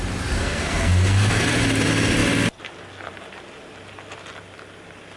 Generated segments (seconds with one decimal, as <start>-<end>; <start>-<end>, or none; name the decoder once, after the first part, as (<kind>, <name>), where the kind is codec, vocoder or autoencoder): 0.4-1.4 (codec, SNAC)